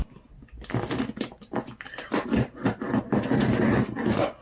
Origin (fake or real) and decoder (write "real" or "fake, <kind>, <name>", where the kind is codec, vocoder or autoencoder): real